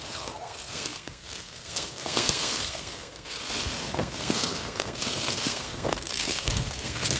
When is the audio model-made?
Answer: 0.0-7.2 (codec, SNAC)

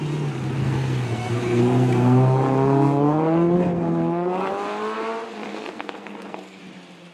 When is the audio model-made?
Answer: 0.6-4.5 (codec, SNAC); 5.5-6.6

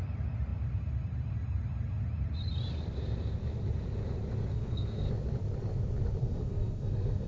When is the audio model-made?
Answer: 4.5-5.1 (codec, SNAC); 6.2-7.3

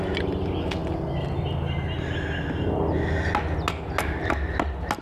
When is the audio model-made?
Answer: none

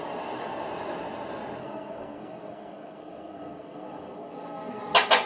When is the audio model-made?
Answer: 1.6-4.8 (codec, SNAC)

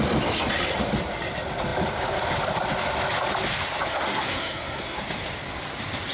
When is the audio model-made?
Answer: 3.9-5.0 (codec, SNAC)